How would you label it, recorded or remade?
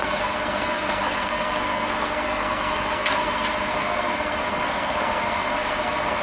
remade